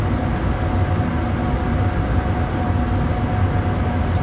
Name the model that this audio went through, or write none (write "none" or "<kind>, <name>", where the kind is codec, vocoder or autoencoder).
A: none